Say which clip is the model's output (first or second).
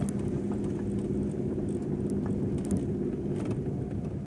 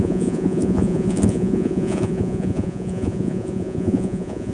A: second